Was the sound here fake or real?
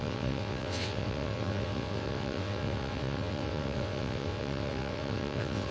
fake